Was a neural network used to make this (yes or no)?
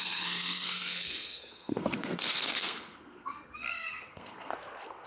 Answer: yes